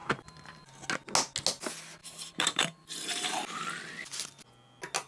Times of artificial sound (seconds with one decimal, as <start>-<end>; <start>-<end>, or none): 0.0-0.9; 2.0-3.4